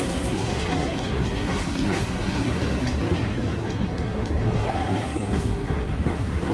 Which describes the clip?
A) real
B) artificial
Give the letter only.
B